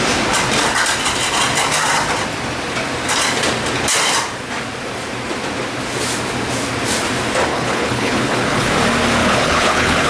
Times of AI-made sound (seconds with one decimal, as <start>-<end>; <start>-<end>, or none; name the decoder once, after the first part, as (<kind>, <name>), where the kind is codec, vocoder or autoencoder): 7.5-8.7 (codec, HILCodec); 9.2-10.1